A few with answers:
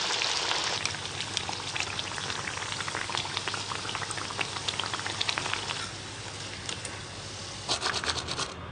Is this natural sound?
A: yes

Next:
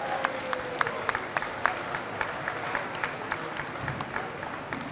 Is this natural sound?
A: yes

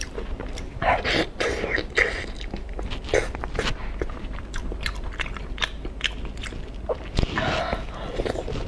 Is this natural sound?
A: yes